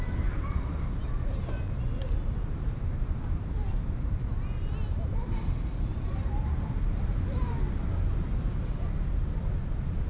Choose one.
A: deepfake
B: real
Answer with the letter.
B